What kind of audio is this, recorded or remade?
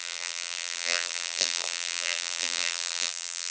remade